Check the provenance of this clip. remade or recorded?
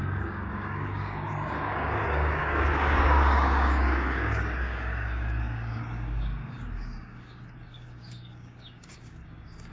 remade